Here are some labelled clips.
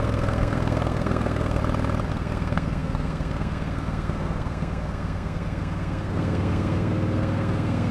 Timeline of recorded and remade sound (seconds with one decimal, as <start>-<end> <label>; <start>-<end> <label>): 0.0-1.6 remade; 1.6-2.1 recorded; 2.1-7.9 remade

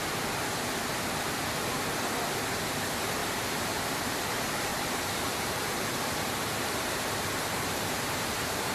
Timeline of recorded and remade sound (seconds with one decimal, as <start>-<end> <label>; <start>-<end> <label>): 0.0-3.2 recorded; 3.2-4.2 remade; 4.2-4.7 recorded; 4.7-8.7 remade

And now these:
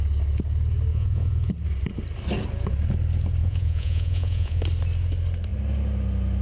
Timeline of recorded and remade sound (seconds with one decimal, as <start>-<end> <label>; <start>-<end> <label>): 0.0-0.9 recorded; 0.9-1.5 remade; 1.5-3.4 recorded; 3.4-4.6 remade; 4.6-6.4 recorded

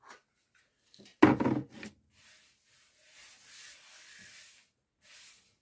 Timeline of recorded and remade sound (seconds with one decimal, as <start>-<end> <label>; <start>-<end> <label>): 0.0-5.6 recorded

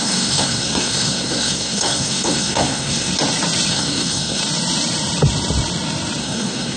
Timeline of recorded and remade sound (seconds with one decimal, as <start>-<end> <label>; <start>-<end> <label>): 0.0-3.1 remade; 3.1-3.7 recorded; 3.7-4.4 remade; 4.4-6.2 recorded; 6.2-6.8 remade

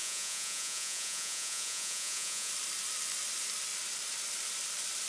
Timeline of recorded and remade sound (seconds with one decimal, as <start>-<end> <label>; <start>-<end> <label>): 0.0-2.5 remade; 2.5-5.1 recorded